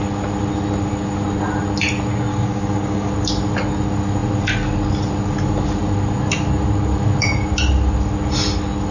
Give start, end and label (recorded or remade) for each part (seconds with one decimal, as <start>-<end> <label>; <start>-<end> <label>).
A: 0.0-2.3 recorded; 2.3-3.1 remade; 3.1-8.9 recorded

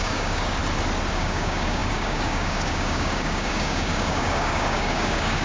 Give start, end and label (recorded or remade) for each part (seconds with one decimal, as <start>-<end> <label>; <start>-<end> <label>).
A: 0.0-0.6 remade; 0.6-1.1 recorded; 1.1-5.4 remade

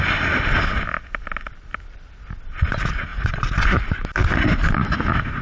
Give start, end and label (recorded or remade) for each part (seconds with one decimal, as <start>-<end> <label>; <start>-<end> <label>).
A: 0.0-5.4 recorded

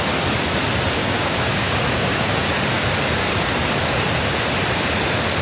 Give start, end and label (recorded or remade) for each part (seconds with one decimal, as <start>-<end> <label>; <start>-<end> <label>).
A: 0.0-1.0 recorded; 1.0-2.5 remade; 2.5-5.4 recorded

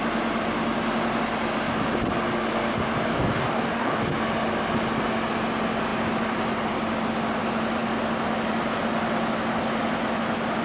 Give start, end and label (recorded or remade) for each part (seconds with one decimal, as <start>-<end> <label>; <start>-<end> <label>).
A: 0.0-3.1 recorded; 3.1-4.0 remade; 4.0-10.6 recorded

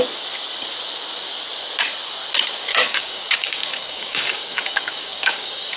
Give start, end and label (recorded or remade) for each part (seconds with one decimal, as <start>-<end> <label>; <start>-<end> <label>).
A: 0.0-2.7 recorded; 2.7-5.8 remade

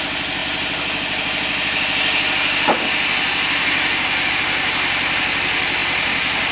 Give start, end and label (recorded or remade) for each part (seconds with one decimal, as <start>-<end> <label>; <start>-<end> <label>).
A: 0.0-6.5 recorded

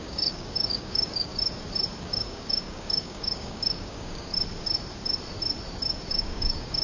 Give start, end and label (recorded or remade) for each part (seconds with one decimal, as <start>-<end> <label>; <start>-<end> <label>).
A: 0.0-1.3 remade; 1.3-2.0 recorded; 2.0-4.3 remade; 4.3-6.1 recorded; 6.1-6.8 remade